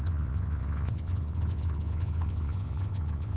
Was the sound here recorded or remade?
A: remade